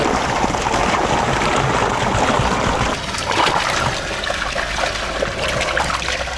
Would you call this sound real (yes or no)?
yes